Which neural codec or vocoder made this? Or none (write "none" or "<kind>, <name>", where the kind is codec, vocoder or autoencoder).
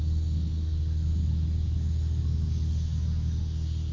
none